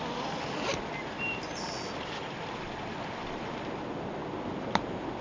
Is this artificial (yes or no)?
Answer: no